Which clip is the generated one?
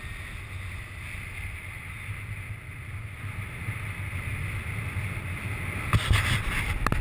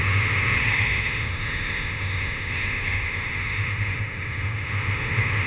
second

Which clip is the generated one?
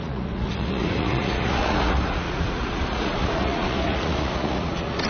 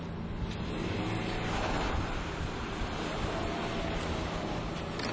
first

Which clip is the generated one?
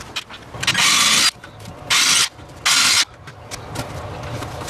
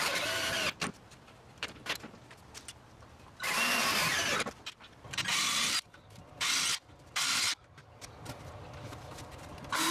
second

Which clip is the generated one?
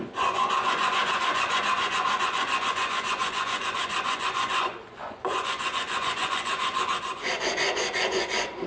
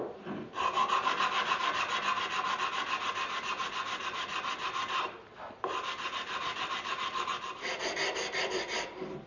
first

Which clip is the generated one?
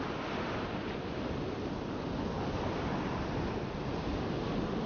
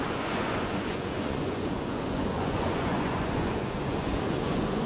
second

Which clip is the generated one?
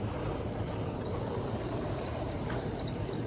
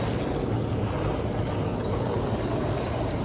first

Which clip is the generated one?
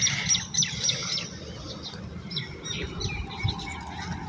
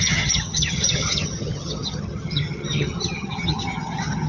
second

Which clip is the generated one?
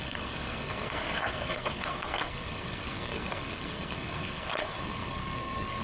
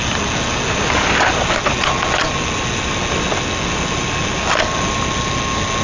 first